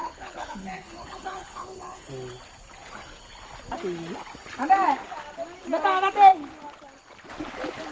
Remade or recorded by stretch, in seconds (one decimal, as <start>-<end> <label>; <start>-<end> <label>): 0.0-2.1 remade; 2.1-7.9 recorded